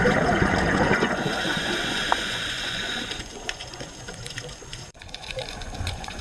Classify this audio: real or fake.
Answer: fake